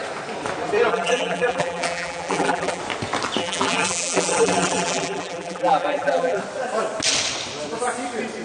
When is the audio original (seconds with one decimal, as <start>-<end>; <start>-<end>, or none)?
0.0-0.9; 2.8-3.4; 6.4-8.4